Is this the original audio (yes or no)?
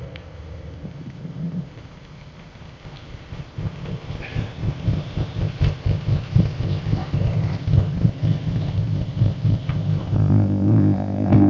no